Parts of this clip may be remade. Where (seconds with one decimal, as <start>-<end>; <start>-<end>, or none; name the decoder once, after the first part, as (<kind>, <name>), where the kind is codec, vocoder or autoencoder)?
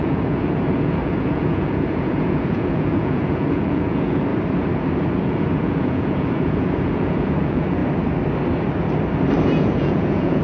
0.0-4.3 (vocoder, Vocos); 5.2-7.8; 9.4-10.4